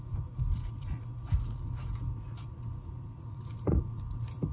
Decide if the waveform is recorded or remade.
remade